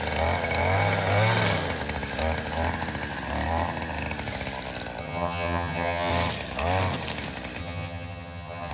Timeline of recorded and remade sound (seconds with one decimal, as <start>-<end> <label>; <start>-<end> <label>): 0.0-5.0 recorded; 5.0-6.1 remade; 6.1-7.6 recorded; 7.6-8.7 remade